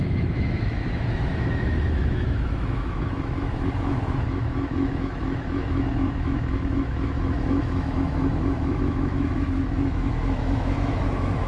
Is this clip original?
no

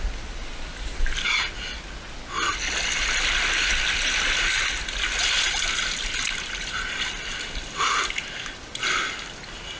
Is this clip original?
yes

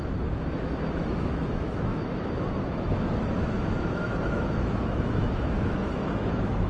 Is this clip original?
no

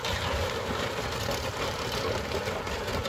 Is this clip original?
yes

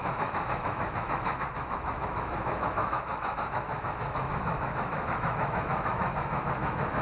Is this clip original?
no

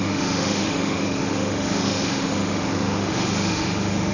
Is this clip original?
no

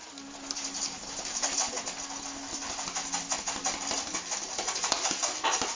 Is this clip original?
yes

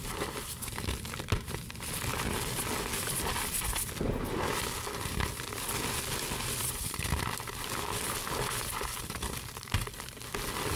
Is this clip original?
yes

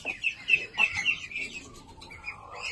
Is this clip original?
yes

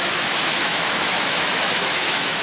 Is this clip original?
no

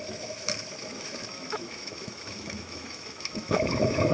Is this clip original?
no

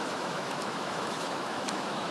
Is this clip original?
no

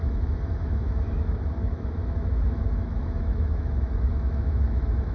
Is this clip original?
no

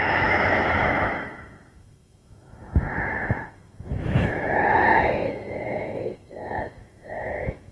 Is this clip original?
no